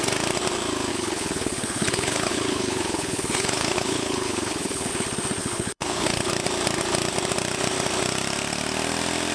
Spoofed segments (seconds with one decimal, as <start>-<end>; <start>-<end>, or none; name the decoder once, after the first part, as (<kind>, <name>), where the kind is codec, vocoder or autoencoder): 0.9-4.9 (codec, HILCodec); 5.4-6.3